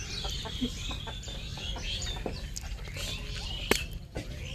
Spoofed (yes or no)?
no